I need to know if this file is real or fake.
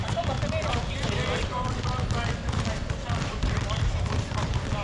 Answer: fake